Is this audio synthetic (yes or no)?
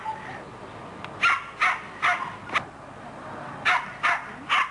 no